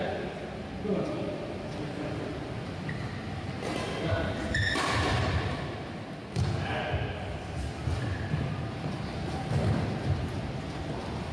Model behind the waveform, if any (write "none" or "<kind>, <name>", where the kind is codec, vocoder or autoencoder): none